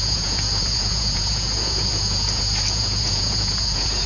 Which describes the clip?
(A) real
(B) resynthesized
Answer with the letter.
B